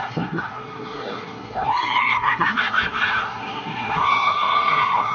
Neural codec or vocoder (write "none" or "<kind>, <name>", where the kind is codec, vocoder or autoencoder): codec, SNAC